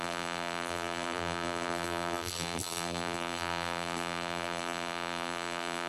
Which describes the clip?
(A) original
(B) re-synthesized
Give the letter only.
B